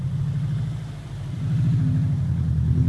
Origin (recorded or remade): recorded